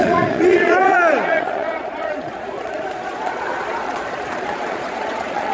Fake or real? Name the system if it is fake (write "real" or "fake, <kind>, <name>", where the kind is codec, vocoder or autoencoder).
fake, vocoder, Vocos